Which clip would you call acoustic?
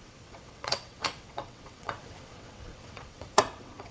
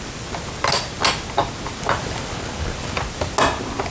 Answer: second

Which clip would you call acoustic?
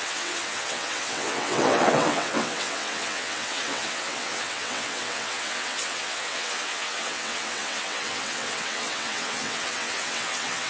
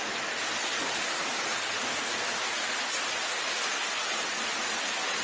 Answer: second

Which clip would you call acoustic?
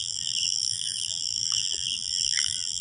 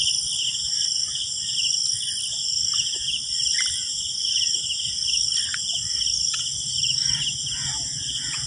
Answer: second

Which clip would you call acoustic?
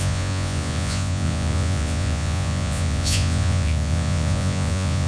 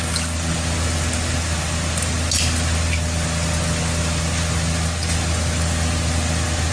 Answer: second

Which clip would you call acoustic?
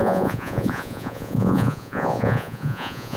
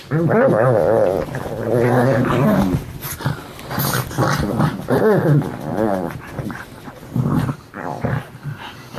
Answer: second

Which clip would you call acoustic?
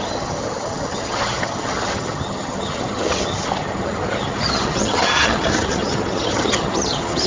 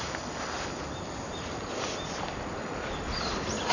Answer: second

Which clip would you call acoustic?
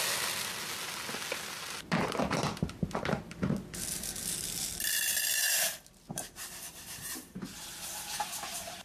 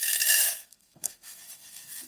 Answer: first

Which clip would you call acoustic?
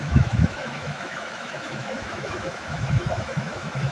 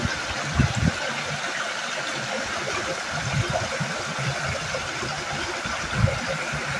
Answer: second